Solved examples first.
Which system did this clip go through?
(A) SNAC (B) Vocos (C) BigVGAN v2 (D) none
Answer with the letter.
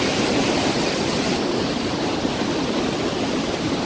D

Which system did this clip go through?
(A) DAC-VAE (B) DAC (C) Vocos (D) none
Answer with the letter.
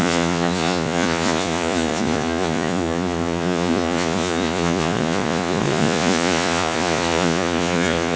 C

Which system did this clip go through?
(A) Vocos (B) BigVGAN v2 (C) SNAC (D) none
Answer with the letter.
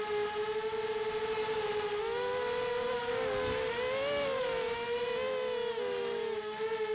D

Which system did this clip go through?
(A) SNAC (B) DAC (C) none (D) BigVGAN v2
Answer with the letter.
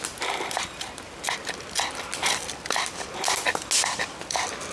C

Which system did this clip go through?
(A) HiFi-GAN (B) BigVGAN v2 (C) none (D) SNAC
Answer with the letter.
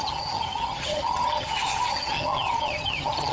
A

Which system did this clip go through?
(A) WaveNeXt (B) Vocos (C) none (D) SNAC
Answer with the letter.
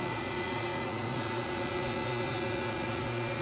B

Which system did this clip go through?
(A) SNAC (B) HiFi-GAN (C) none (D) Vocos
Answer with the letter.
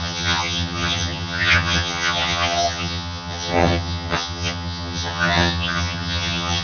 B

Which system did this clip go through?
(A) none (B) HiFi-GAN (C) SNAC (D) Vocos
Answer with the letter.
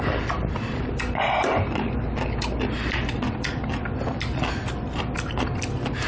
A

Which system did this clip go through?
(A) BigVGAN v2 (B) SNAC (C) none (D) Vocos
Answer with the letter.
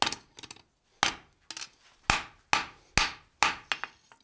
C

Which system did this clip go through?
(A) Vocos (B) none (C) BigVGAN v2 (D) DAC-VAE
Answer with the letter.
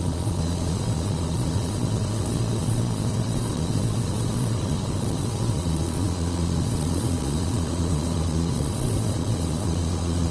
A